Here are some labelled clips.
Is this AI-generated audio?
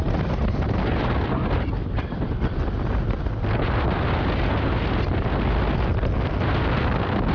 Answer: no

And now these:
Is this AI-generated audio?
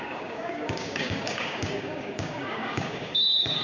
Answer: yes